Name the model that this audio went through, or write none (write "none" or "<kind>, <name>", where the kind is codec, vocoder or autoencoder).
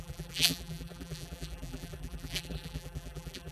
vocoder, BigVGAN v2